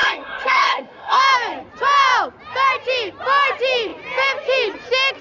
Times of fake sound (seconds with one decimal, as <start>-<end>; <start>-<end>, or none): 0.0-1.2